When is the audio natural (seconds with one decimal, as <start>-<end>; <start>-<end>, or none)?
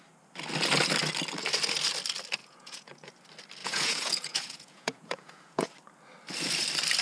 0.0-2.4; 3.1-3.6; 5.7-7.0